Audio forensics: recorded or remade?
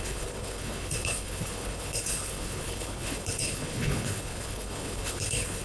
remade